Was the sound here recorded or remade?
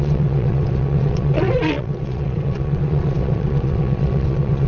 remade